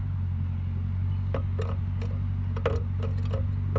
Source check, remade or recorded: recorded